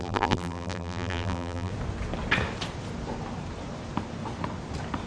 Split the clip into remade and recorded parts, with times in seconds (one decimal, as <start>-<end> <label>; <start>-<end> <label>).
0.0-1.7 remade; 1.7-5.1 recorded